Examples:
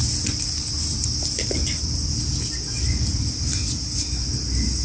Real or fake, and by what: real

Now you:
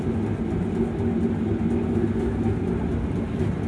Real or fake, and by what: real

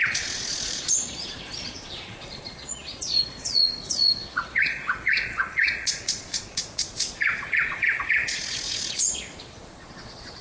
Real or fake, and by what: fake, vocoder, Vocos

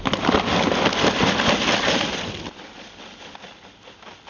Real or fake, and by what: real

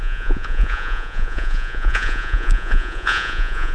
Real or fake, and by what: fake, vocoder, Vocos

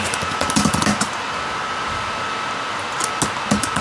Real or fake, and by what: real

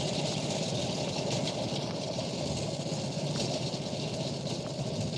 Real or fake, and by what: real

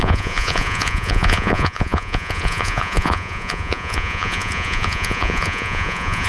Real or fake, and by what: fake, vocoder, Vocos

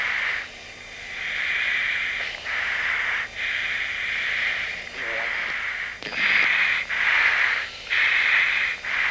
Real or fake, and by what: real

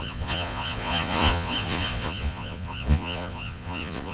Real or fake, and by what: fake, vocoder, Vocos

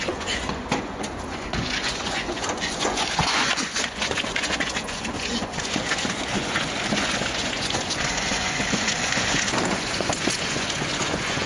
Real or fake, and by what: fake, vocoder, Vocos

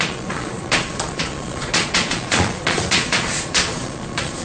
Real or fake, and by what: fake, vocoder, Vocos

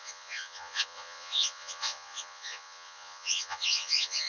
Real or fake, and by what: fake, vocoder, Vocos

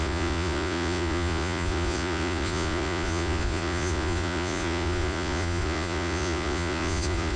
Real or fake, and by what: fake, vocoder, Vocos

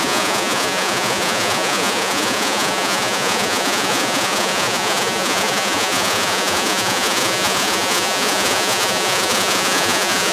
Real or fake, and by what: fake, vocoder, Vocos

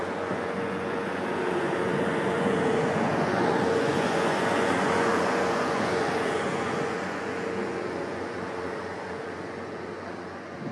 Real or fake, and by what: fake, vocoder, Vocos